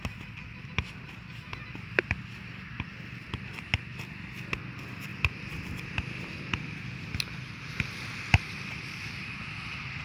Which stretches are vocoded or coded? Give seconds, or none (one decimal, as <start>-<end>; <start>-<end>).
none